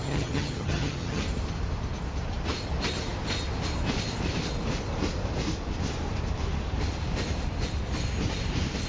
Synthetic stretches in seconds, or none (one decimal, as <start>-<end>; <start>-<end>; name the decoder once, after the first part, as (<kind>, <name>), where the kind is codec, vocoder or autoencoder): 0.0-1.2 (vocoder, HiFi-GAN)